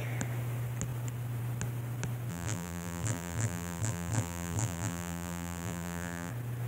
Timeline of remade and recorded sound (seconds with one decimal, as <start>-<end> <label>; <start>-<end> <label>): 0.0-2.3 recorded; 2.3-6.3 remade; 6.3-6.7 recorded